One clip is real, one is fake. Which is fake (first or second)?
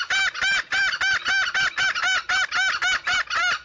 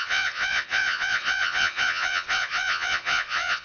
second